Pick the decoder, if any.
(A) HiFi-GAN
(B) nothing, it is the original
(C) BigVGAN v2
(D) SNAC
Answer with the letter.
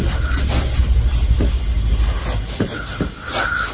B